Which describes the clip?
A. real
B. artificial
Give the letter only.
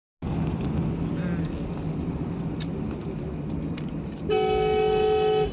A